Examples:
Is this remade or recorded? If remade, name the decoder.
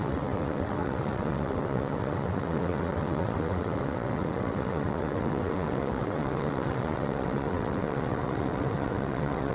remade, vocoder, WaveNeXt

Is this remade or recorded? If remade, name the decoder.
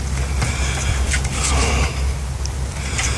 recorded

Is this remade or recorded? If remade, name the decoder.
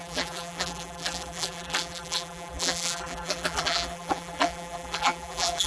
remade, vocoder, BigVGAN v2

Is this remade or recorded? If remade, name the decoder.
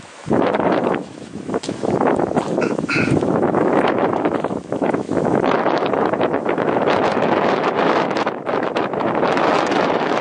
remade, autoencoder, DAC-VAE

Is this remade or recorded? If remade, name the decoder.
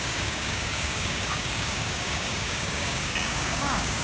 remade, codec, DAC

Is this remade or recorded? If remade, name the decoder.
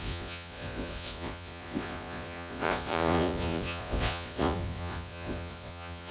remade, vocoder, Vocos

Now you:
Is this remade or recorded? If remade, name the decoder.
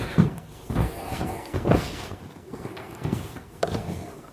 remade, codec, SNAC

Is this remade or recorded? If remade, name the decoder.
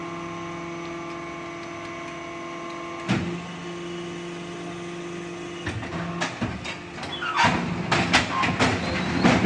recorded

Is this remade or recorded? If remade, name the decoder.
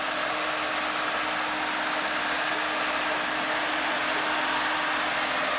recorded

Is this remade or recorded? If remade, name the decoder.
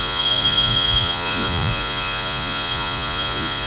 remade, vocoder, Vocos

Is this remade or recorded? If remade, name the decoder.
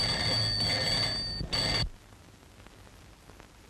recorded